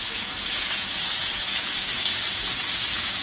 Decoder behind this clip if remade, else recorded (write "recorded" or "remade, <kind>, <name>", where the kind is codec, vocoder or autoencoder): remade, vocoder, Vocos